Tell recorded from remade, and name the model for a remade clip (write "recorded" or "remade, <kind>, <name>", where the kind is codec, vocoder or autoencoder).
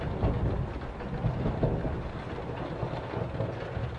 recorded